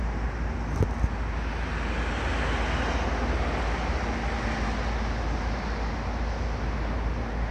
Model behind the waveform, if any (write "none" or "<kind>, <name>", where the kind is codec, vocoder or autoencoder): none